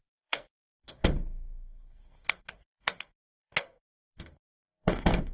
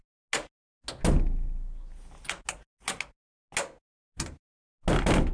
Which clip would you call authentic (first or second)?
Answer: second